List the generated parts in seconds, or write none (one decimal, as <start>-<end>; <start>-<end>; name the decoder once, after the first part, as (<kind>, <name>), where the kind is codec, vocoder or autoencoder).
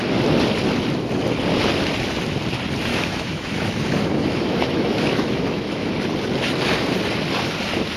2.9-5.9 (autoencoder, DAC-VAE)